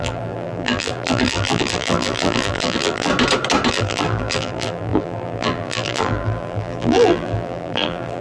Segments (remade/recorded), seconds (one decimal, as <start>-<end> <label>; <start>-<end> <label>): 0.0-3.1 remade; 3.1-3.7 recorded; 3.7-8.2 remade